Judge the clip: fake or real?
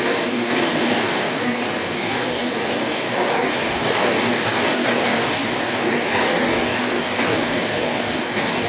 fake